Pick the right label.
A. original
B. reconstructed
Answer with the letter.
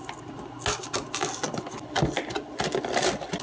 A